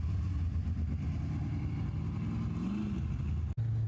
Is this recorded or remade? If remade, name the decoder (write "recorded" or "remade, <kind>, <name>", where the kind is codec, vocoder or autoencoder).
recorded